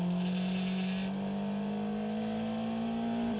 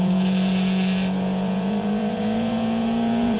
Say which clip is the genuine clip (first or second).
first